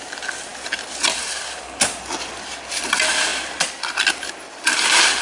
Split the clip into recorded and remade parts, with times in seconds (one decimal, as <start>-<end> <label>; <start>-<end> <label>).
0.0-5.2 recorded